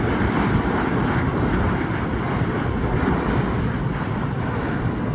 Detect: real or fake fake